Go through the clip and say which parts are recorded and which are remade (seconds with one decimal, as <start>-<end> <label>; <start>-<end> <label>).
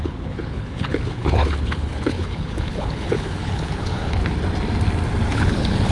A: 0.0-4.2 remade; 4.2-5.3 recorded; 5.3-5.9 remade